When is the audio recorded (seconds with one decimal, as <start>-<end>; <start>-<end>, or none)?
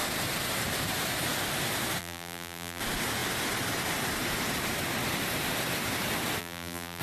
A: 0.0-2.0; 2.8-6.4